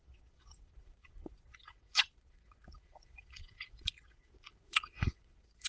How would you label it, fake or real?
fake